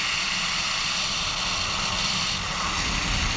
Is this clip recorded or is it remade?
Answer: recorded